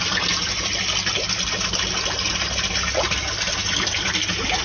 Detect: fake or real real